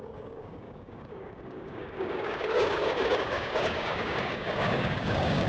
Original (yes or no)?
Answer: no